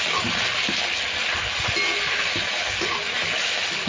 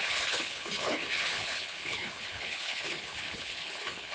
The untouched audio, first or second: first